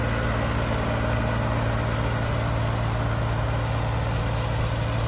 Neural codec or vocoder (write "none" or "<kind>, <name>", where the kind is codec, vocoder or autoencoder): none